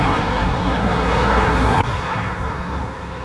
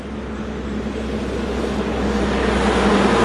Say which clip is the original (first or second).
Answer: second